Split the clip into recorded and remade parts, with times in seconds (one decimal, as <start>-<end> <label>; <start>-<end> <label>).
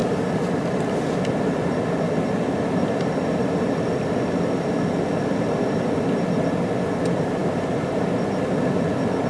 0.0-9.3 recorded